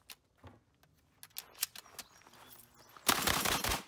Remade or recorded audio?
recorded